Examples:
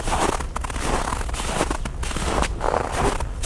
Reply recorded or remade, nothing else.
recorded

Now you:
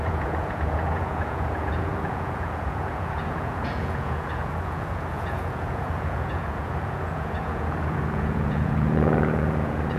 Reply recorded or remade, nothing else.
remade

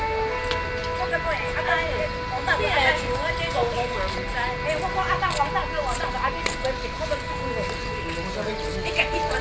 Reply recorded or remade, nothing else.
recorded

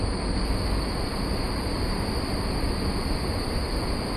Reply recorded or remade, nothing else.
recorded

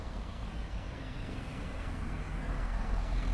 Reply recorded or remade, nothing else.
remade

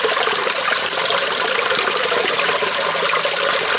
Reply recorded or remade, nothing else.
recorded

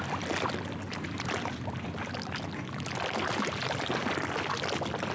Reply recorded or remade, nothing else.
recorded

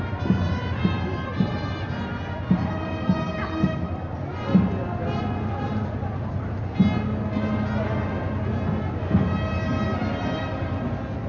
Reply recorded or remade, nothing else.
recorded